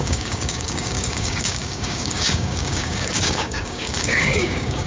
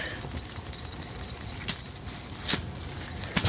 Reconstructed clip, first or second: first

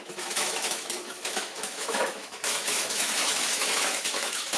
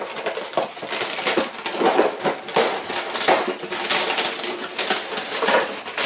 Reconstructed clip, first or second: first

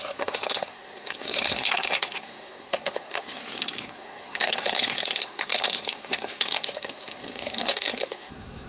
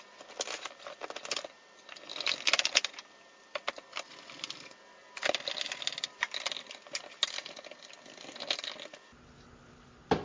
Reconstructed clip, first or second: first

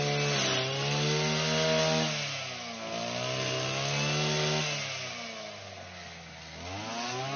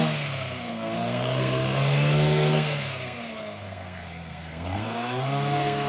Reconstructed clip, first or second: second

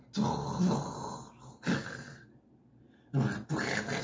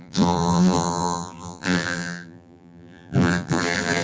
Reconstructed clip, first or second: second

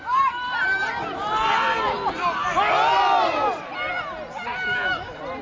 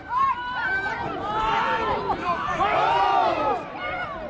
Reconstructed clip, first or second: second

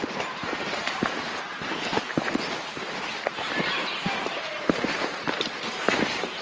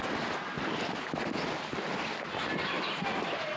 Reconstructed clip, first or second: first